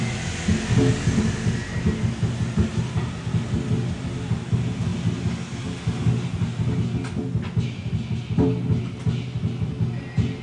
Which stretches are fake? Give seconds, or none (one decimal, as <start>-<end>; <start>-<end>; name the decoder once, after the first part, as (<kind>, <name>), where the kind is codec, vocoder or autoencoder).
none